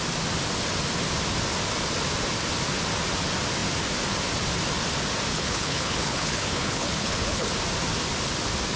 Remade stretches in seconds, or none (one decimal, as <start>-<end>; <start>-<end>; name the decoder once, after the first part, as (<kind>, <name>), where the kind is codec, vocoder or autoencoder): 5.3-7.5 (codec, HILCodec)

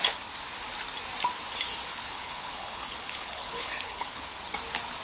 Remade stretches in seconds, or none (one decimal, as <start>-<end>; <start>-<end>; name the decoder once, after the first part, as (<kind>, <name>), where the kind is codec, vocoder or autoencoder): 1.9-4.2 (codec, HILCodec)

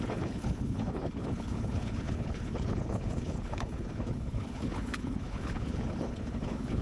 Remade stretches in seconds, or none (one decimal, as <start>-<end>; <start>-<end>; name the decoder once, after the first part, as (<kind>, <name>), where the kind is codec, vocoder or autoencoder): 0.0-6.8 (codec, HILCodec)

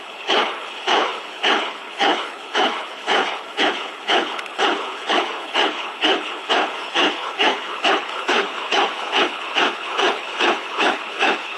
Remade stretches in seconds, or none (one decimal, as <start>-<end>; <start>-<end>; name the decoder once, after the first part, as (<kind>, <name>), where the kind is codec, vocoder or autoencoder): 0.0-11.6 (codec, HILCodec)